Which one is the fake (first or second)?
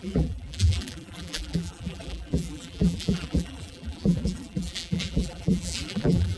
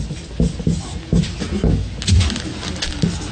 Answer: first